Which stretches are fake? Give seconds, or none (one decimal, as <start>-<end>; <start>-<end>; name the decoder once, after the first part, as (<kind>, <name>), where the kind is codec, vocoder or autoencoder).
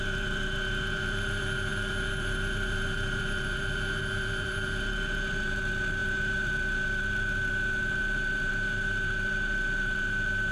0.0-10.5 (vocoder, BigVGAN v2)